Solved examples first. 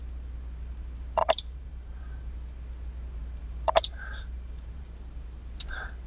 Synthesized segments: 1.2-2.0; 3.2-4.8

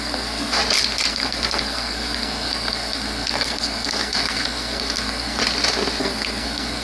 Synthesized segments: 0.0-0.6; 1.1-5.4; 6.0-6.8

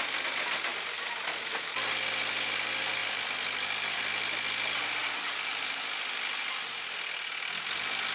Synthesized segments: none

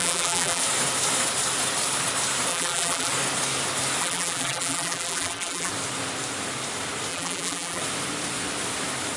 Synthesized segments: 0.0-0.6; 2.5-3.1; 4.0-5.7; 7.1-7.8